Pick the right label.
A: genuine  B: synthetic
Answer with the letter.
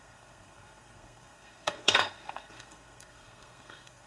B